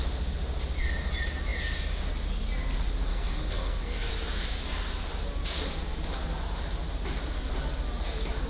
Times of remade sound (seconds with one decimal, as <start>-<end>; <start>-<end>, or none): 3.1-4.1

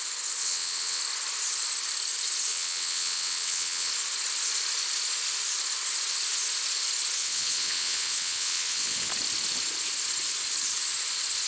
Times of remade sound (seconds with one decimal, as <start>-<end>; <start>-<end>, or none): 0.4-1.0; 2.5-3.9; 7.2-9.1

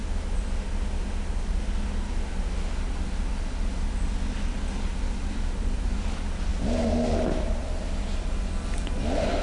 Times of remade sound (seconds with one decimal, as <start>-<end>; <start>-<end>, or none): none

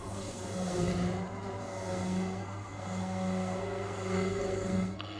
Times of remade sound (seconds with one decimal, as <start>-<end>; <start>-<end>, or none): 0.0-0.9; 1.6-5.2